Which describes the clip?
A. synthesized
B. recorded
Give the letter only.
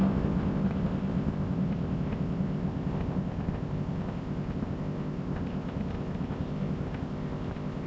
A